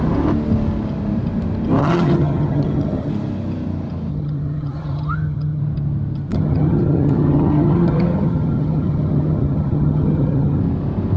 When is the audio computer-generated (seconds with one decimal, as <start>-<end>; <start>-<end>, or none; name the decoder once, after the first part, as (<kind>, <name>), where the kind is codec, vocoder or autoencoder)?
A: 1.8-3.1 (vocoder, HiFi-GAN); 4.1-5.6; 6.3-10.6

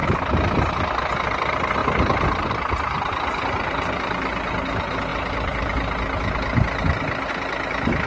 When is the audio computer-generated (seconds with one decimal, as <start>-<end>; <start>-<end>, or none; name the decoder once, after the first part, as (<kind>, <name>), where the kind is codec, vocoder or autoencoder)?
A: none

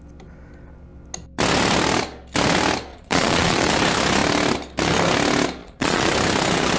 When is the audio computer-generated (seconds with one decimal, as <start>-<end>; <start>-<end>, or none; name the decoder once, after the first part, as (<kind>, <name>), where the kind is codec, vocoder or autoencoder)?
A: 2.9-3.7 (vocoder, Vocos); 5.6-6.1

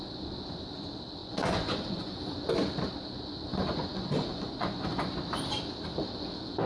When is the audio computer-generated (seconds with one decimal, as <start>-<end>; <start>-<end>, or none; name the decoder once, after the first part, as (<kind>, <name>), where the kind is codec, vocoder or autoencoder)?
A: 1.2-2.2 (vocoder, Vocos); 3.5-5.0

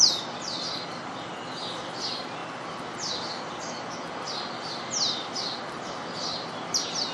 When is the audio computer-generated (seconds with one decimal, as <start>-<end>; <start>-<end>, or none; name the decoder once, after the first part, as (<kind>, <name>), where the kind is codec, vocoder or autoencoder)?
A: none

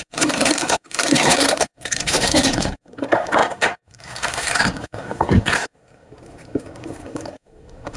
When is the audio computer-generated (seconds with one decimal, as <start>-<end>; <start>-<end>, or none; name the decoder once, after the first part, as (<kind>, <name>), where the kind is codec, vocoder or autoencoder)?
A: 0.0-8.0 (codec, SNAC)

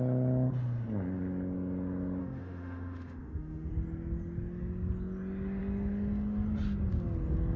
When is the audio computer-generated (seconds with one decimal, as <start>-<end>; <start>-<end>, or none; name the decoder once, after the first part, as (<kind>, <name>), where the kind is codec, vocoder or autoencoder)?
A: 2.2-3.7 (autoencoder, DAC-VAE)

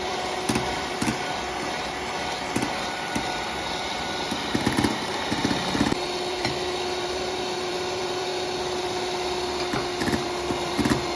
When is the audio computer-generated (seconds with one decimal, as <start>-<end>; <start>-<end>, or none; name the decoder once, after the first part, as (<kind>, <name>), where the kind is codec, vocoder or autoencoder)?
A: 0.0-1.1 (vocoder, BigVGAN v2); 3.8-5.4; 6.3-8.3; 10.0-11.2